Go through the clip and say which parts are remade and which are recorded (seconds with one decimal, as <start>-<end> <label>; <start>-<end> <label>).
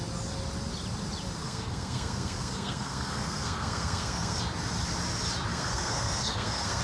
0.0-1.4 recorded; 1.4-4.4 remade; 4.4-5.5 recorded; 5.5-6.8 remade